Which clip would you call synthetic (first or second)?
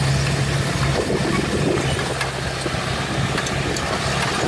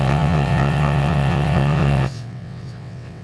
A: second